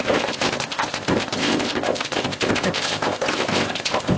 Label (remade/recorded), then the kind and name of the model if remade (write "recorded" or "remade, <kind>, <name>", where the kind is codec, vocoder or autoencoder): remade, codec, ZipCodec